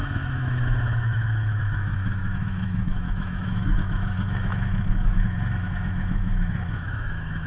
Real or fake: fake